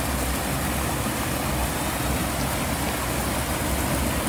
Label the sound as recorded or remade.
recorded